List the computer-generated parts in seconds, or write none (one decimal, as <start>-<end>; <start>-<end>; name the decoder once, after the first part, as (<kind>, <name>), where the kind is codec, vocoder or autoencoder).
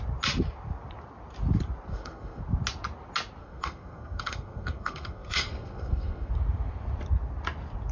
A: 1.9-2.4 (codec, SNAC); 3.4-6.3